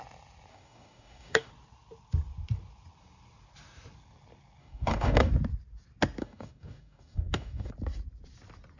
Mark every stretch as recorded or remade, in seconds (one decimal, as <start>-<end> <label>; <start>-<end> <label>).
0.0-0.5 recorded; 0.5-1.5 remade; 1.5-4.6 recorded; 4.6-5.3 remade; 5.3-6.2 recorded; 6.2-7.7 remade; 7.7-8.8 recorded